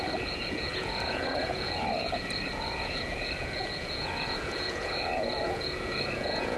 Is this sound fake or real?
fake